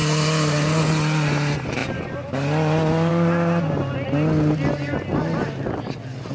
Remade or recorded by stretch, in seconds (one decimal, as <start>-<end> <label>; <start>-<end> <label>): 0.0-6.3 recorded